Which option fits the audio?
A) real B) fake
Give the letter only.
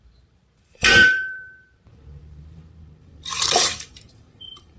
B